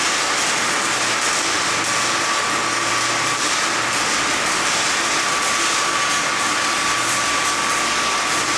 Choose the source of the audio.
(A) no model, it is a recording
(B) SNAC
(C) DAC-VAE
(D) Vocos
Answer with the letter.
A